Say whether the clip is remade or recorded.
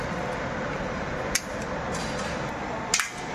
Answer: recorded